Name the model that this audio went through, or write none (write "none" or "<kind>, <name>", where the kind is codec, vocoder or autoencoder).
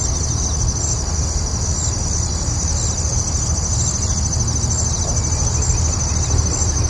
none